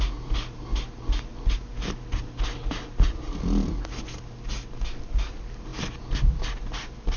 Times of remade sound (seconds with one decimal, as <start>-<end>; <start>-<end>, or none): none